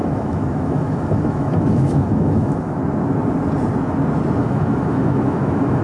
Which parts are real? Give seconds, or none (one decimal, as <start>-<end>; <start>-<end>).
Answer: 2.8-4.4